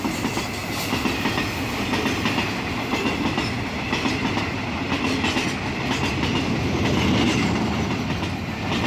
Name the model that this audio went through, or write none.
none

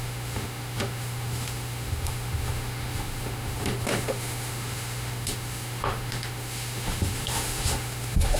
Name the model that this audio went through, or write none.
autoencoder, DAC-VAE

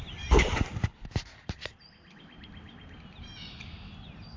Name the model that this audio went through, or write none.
none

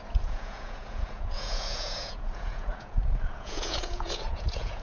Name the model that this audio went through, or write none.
vocoder, Vocos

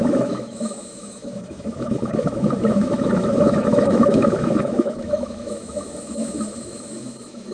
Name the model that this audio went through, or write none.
autoencoder, DAC-VAE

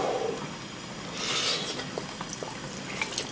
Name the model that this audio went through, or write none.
none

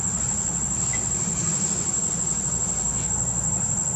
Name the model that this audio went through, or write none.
none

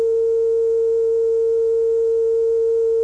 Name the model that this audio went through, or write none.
none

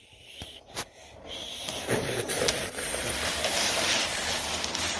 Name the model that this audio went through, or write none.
vocoder, BigVGAN v2